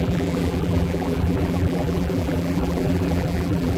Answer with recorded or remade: remade